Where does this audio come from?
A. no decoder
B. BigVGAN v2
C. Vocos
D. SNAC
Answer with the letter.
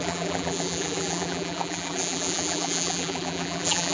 B